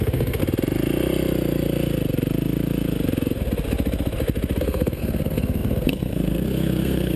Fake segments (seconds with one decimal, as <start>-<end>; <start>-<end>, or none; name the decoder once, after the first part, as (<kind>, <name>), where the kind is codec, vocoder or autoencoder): 0.0-0.4 (codec, SNAC); 4.6-7.2